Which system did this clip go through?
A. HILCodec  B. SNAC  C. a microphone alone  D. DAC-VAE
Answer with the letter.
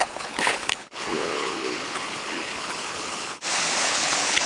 A